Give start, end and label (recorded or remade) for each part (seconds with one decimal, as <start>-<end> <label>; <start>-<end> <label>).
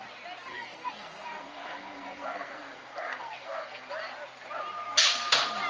0.0-0.5 recorded; 0.5-3.9 remade; 3.9-5.7 recorded